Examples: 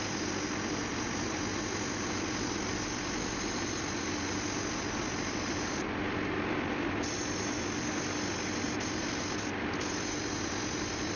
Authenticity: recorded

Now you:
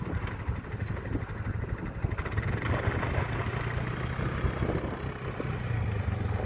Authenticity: recorded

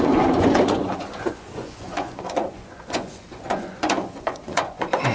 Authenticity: remade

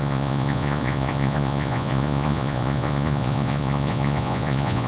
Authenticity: remade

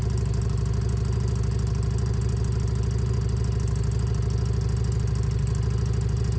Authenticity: recorded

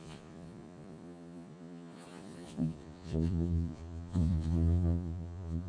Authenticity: remade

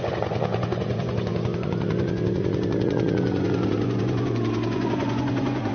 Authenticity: remade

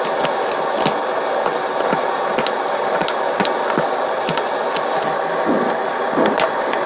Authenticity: recorded